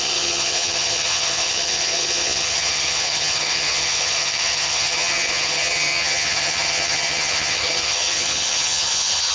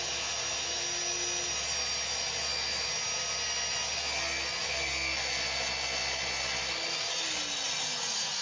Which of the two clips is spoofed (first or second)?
first